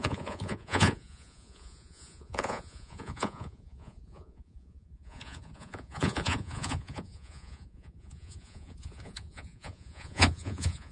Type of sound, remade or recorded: remade